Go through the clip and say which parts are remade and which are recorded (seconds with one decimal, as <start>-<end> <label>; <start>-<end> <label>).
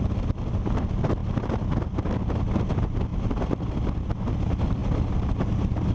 0.0-5.9 recorded